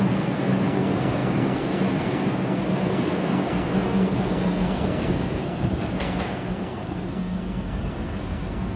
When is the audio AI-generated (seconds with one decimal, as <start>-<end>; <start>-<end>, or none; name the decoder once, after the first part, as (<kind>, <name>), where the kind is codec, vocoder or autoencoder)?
0.0-8.8 (codec, SNAC)